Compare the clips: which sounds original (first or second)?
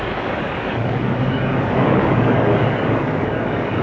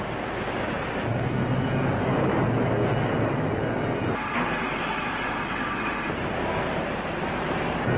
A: second